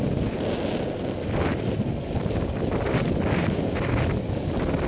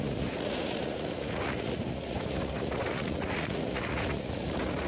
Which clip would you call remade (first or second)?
second